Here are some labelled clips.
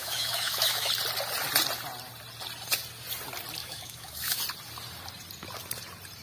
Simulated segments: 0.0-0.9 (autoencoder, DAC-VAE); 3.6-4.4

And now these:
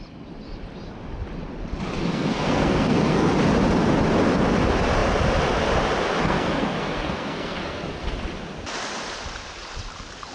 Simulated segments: 2.1-3.3 (codec, SNAC); 6.2-8.1

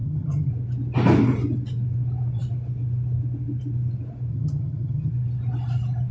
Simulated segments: 0.0-0.5 (vocoder, HiFi-GAN); 4.3-5.1

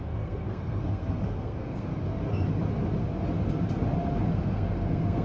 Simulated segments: 0.0-1.9 (codec, SNAC); 4.3-5.2

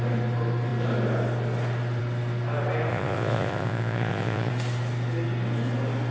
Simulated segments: 2.9-4.5 (vocoder, Vocos)

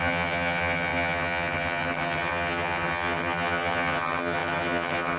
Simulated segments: 0.0-5.2 (vocoder, HiFi-GAN)

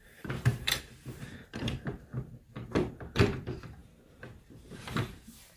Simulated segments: 0.0-2.1 (vocoder, BigVGAN v2); 3.1-3.8; 4.4-5.6

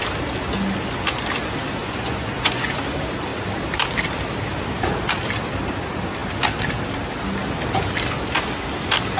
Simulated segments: 1.8-2.8 (vocoder, Vocos)